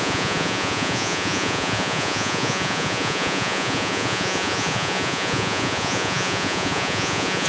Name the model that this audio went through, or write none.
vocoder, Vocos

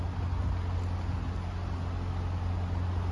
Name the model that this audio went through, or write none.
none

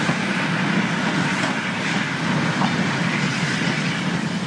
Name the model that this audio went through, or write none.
none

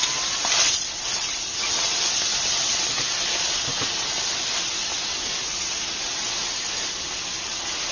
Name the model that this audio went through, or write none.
none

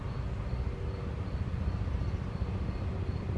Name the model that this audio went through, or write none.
none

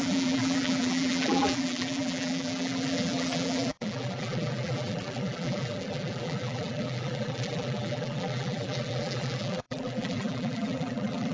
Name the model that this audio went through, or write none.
vocoder, BigVGAN v2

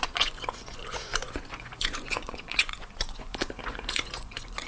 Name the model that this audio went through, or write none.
vocoder, Vocos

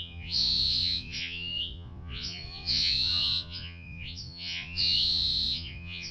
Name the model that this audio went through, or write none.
vocoder, Vocos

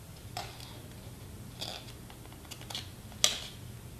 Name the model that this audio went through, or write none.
none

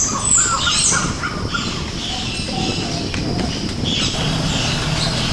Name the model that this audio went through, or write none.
none